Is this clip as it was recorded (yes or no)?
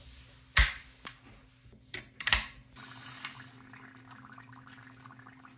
yes